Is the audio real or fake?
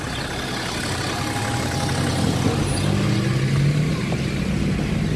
real